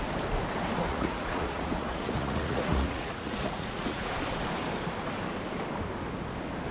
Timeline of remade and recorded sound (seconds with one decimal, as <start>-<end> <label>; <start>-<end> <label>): 0.0-0.8 recorded; 0.8-4.1 remade; 4.1-6.7 recorded